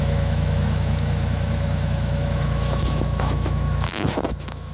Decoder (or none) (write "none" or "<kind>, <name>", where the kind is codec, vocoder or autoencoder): autoencoder, DAC-VAE